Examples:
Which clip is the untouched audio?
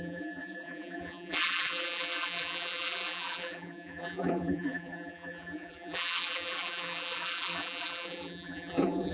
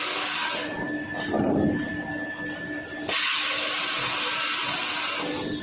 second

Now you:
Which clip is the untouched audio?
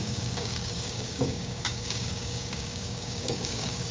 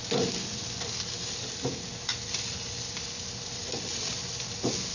second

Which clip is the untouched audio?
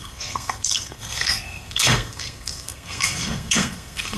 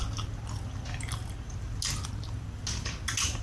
second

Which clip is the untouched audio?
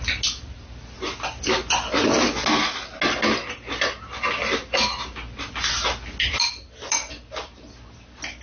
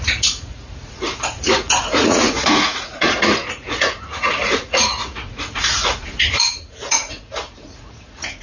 first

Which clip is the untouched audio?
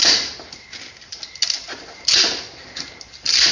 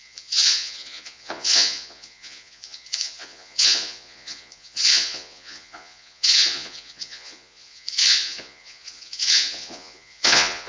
first